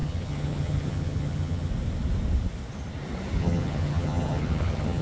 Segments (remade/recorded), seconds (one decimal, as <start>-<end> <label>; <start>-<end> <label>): 0.0-1.7 remade; 1.7-3.4 recorded; 3.4-5.0 remade